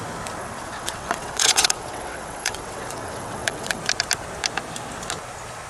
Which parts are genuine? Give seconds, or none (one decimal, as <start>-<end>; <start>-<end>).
0.0-0.4; 3.8-5.7